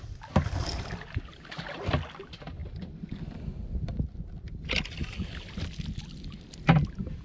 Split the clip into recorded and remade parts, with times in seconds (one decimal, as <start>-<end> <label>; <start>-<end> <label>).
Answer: 0.0-7.2 recorded